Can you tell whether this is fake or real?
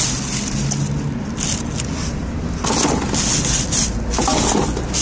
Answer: real